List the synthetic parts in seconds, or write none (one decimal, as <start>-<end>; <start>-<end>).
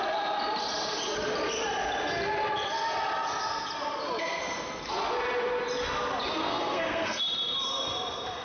6.4-7.2